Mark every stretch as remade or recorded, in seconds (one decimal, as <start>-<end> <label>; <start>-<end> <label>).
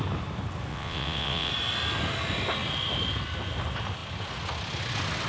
0.0-0.7 recorded; 0.7-1.5 remade; 1.5-5.3 recorded